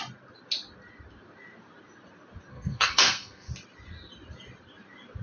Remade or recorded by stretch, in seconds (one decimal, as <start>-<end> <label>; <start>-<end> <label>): 0.0-2.5 recorded; 2.5-3.5 remade; 3.5-5.2 recorded